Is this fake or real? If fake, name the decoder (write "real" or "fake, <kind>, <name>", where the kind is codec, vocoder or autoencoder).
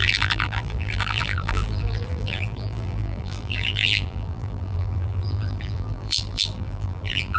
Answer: fake, vocoder, BigVGAN v2